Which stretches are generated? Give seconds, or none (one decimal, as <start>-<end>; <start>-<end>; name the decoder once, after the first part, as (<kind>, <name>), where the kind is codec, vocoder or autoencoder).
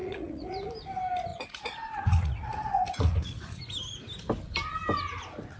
0.0-0.5 (vocoder, Vocos); 1.3-3.6